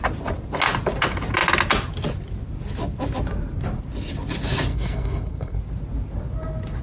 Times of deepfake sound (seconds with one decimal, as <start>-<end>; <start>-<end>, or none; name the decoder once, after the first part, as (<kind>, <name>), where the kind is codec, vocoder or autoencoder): 4.7-5.6 (codec, SNAC)